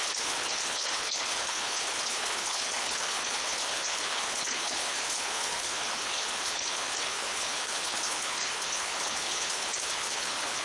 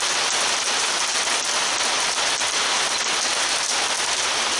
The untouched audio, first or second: second